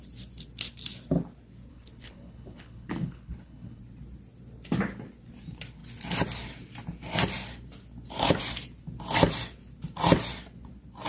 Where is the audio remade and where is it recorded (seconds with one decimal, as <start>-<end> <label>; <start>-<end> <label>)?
0.0-1.7 recorded; 1.7-3.8 remade; 3.8-11.1 recorded